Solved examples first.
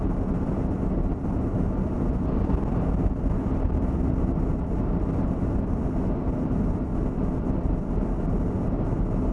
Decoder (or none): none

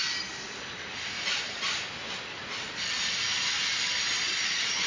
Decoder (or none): none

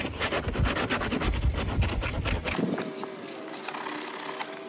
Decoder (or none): none